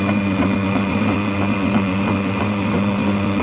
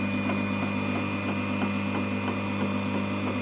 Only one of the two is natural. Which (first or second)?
second